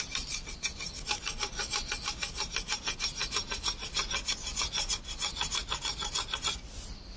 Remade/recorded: recorded